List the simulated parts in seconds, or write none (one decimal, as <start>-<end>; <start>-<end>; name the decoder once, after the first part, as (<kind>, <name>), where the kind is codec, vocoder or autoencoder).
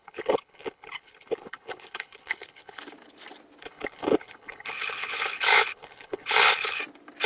0.0-2.8 (codec, HILCodec); 3.6-6.8